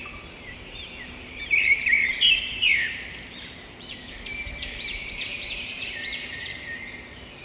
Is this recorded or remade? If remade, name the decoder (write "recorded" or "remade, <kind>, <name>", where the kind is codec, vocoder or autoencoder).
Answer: remade, vocoder, BigVGAN v2